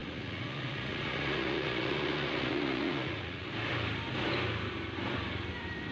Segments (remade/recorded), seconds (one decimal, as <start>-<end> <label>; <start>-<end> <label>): 0.0-3.5 remade; 3.5-5.9 recorded